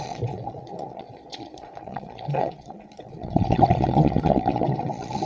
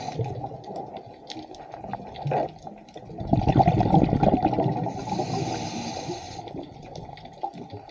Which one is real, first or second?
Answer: second